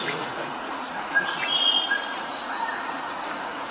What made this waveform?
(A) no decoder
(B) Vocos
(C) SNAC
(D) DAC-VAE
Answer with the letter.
B